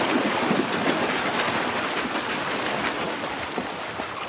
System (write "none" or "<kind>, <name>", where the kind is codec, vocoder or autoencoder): none